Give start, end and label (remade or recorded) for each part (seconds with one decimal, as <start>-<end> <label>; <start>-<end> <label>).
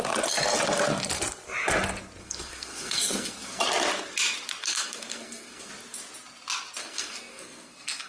0.0-2.2 recorded; 2.2-3.6 remade; 3.6-4.6 recorded; 4.6-5.7 remade; 5.7-6.8 recorded; 6.8-8.1 remade